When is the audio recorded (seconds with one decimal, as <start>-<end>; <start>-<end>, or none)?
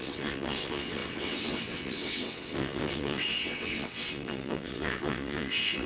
none